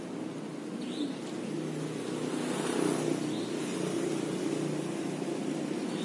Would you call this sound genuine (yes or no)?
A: yes